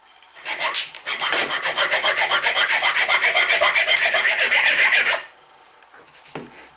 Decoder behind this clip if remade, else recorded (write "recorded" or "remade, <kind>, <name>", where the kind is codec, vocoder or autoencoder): recorded